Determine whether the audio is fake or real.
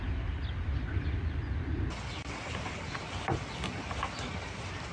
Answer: real